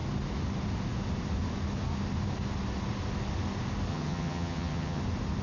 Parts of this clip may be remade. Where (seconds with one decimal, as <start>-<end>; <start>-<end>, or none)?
3.9-5.0